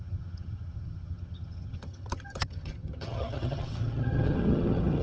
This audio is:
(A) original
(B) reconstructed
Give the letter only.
B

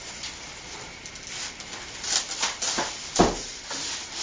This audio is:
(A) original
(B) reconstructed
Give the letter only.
A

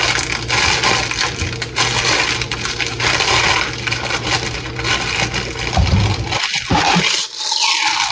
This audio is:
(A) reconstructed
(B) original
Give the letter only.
B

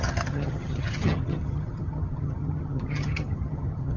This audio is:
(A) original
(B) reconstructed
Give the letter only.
B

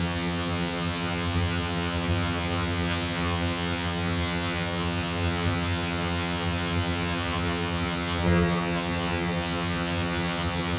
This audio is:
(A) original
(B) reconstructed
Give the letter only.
B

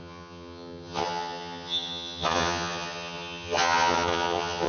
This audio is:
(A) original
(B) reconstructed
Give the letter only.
B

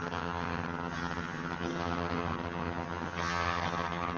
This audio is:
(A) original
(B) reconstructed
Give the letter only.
B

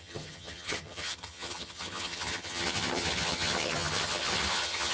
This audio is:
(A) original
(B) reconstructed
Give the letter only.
B